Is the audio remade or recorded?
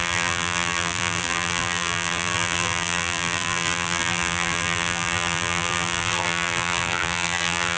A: remade